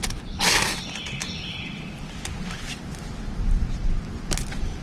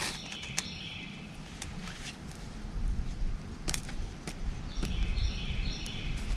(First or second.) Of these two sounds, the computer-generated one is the second